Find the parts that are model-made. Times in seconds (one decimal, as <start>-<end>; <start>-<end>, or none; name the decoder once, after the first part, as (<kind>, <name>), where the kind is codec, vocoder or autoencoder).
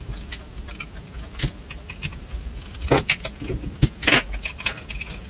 none